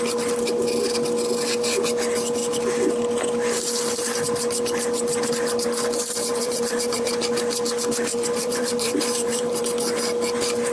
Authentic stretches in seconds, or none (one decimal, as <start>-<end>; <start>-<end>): 0.0-6.3; 7.1-8.1; 9.6-10.7